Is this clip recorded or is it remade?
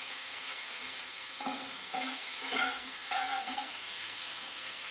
remade